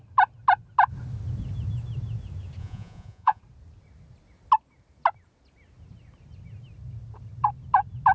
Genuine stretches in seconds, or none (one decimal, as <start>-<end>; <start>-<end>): 0.0-2.6; 3.4-8.1